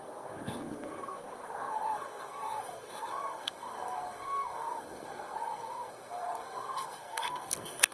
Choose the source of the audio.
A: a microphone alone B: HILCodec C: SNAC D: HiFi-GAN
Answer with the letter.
C